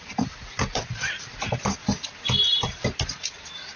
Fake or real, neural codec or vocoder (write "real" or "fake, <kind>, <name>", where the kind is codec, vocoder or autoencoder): real